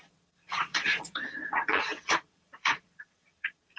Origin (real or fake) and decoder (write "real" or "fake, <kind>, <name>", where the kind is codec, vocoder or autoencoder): fake, vocoder, Vocos